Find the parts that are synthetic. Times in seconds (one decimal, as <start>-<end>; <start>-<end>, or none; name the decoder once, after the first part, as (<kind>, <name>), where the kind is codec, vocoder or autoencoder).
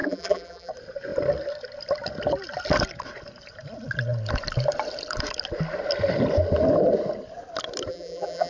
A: 0.0-0.7 (vocoder, BigVGAN v2); 7.9-8.5